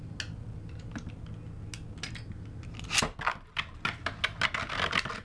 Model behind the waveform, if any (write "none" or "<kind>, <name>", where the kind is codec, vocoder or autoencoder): none